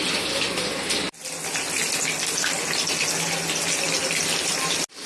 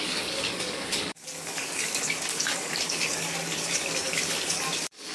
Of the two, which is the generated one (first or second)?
second